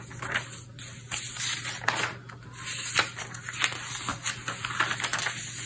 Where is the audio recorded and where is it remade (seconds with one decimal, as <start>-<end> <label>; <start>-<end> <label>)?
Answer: 0.0-5.7 recorded